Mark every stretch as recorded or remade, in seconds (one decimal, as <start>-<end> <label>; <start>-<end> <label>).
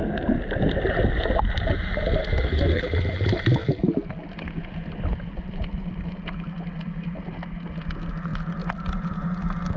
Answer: 0.0-2.2 recorded; 2.2-2.8 remade; 2.8-9.8 recorded